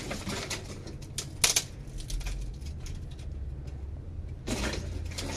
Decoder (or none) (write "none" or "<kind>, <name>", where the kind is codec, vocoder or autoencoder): none